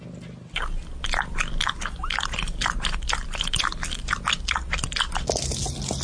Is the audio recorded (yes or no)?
yes